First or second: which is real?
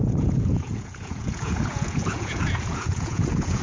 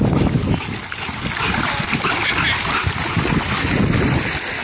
second